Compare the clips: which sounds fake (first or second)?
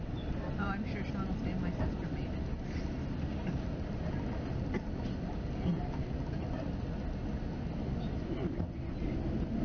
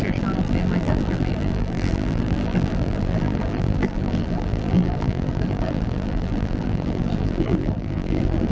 second